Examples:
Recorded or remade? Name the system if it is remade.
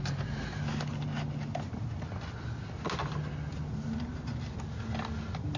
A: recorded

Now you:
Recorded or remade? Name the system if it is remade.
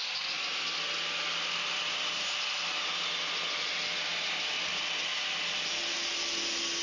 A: recorded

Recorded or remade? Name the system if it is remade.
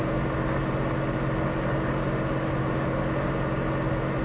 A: recorded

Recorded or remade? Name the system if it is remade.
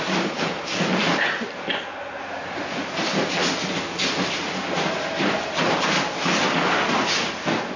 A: recorded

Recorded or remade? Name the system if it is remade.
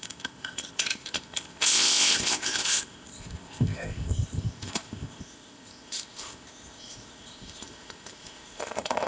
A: remade, codec, ZipCodec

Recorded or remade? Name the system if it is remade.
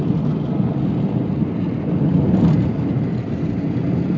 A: recorded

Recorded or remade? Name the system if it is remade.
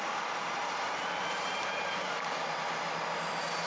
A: recorded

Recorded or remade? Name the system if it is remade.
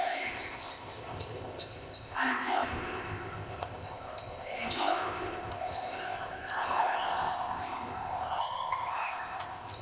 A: remade, codec, ZipCodec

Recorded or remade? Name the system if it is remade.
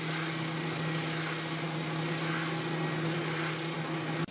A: recorded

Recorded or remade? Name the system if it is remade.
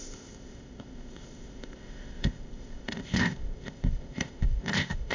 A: remade, codec, ZipCodec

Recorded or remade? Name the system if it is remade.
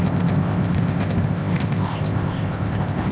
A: remade, codec, ZipCodec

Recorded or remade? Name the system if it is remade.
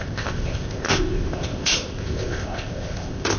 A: remade, codec, ZipCodec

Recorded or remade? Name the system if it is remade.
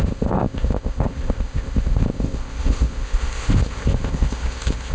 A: remade, codec, ZipCodec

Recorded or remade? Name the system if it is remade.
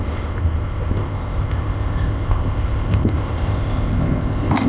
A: remade, codec, ZipCodec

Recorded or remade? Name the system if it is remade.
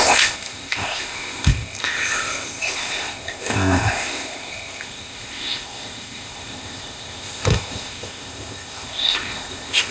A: remade, codec, ZipCodec